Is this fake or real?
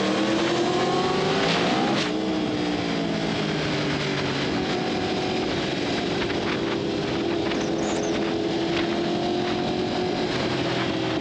real